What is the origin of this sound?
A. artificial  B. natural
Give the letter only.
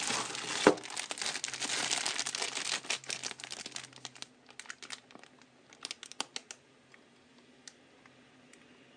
B